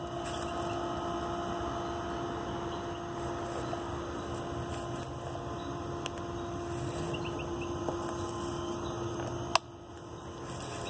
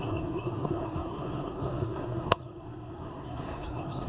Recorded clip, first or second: first